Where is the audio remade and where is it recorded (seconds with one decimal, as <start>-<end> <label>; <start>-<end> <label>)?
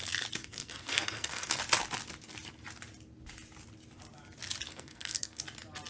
0.0-0.4 recorded; 0.4-1.6 remade; 1.6-4.7 recorded; 4.7-5.4 remade; 5.4-5.9 recorded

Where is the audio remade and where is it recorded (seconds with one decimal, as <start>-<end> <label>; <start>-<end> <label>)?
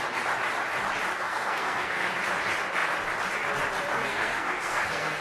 0.0-1.1 recorded; 1.1-2.1 remade; 2.1-3.9 recorded; 3.9-5.2 remade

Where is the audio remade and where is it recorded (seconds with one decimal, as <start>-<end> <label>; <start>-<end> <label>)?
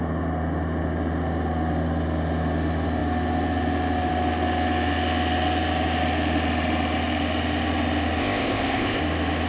0.0-8.2 recorded; 8.2-9.0 remade; 9.0-9.5 recorded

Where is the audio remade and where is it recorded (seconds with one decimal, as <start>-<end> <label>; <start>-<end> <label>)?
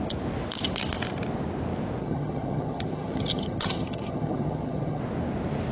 0.0-2.0 recorded; 2.0-5.0 remade; 5.0-5.7 recorded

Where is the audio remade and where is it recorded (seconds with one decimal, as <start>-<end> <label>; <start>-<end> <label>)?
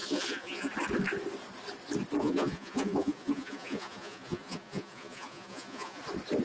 0.0-0.7 remade; 0.7-2.2 recorded; 2.2-6.0 remade; 6.0-6.4 recorded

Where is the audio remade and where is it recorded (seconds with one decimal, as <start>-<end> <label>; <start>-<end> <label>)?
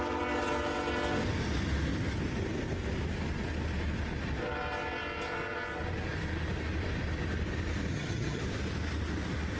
0.0-7.9 recorded; 7.9-8.4 remade; 8.4-9.6 recorded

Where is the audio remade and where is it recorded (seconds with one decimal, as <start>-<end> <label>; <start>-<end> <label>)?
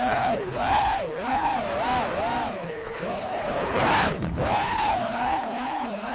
0.0-1.5 remade; 1.5-2.5 recorded; 2.5-6.1 remade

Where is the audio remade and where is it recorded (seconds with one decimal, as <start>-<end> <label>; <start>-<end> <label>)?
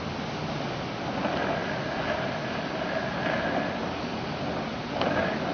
0.0-5.5 recorded